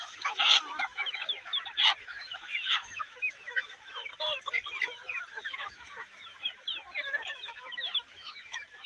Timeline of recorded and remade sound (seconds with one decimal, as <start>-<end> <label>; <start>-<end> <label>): 0.0-1.5 remade; 1.5-2.0 recorded; 2.0-4.1 remade; 4.1-5.3 recorded; 5.3-6.7 remade; 6.7-7.3 recorded; 7.3-8.9 remade